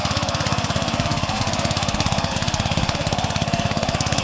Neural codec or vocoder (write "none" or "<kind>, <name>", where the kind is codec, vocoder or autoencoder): codec, SNAC